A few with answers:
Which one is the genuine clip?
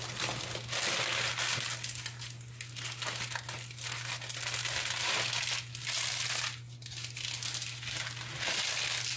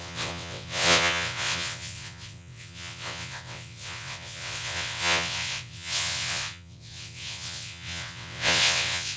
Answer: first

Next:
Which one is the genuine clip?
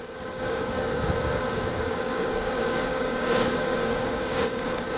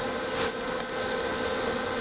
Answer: second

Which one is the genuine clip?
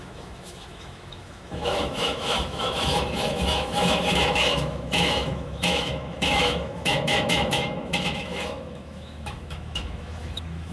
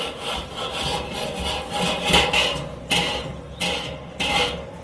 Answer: second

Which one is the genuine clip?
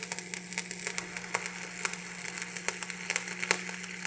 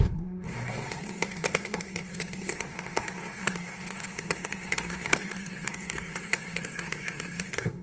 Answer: first